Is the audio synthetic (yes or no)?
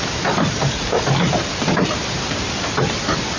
no